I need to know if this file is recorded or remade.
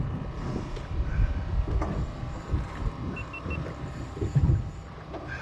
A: recorded